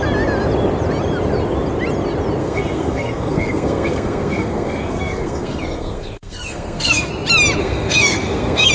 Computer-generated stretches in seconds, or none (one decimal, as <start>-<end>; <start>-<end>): 2.4-7.1; 7.6-8.7